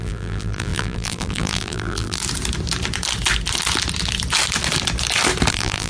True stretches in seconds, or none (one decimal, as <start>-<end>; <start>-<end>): 2.2-5.5